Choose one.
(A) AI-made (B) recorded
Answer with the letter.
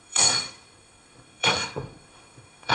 A